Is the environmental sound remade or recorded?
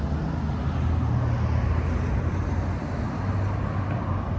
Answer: recorded